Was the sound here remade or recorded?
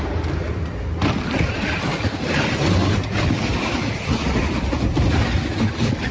recorded